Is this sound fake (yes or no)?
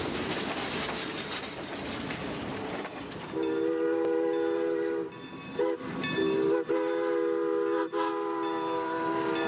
no